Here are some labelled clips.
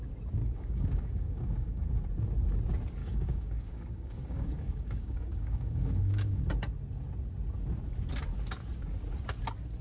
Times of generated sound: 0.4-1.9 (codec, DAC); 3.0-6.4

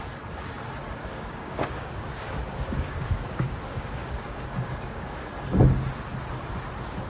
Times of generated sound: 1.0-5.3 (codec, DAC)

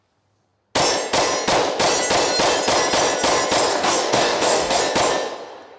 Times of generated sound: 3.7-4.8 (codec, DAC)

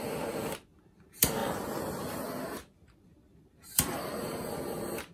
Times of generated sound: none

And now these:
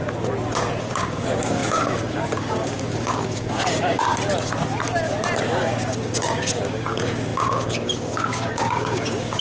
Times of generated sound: 0.8-4.1 (codec, DAC); 5.6-9.4

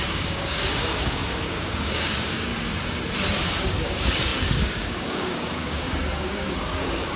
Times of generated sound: 0.0-2.5 (codec, DAC); 3.3-7.2